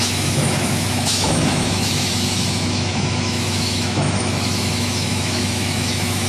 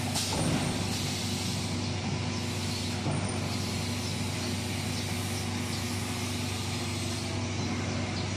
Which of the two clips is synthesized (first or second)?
first